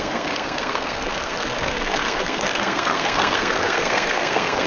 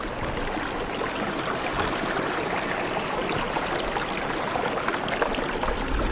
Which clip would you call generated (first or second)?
first